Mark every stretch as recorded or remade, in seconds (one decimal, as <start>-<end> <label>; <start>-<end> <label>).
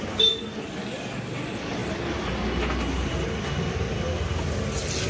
0.0-5.1 recorded